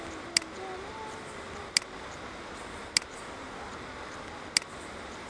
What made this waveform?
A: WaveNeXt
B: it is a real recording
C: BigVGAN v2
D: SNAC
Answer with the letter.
B